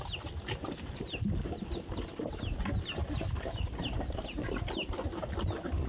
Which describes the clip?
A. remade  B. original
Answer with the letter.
B